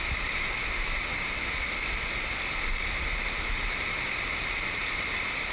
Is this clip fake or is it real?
real